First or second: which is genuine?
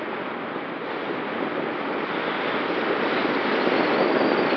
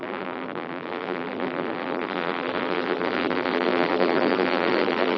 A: first